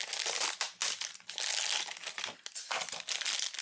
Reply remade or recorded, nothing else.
recorded